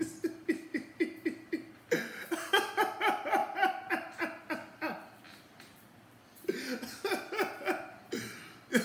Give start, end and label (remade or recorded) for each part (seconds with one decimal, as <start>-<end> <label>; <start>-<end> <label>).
0.0-3.4 recorded; 3.4-4.4 remade; 4.4-8.8 recorded